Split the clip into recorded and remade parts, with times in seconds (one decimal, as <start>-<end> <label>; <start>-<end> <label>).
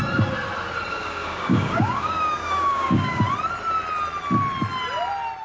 0.0-0.9 recorded; 0.9-3.2 remade; 3.2-5.4 recorded